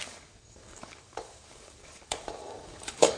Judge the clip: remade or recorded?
remade